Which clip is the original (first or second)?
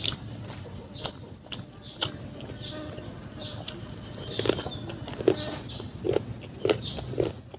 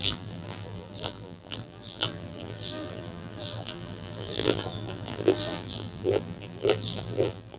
first